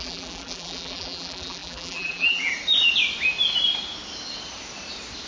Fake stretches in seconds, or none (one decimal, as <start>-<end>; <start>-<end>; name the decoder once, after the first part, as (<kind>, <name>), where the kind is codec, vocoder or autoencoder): 0.0-2.5 (vocoder, BigVGAN v2)